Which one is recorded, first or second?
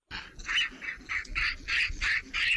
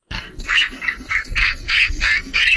first